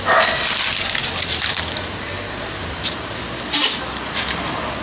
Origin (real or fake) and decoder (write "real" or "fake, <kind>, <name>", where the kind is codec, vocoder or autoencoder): real